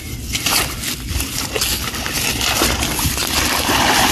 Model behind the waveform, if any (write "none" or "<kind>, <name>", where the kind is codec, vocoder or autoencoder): none